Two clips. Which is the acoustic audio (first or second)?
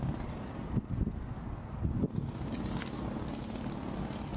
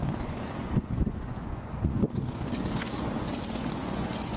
first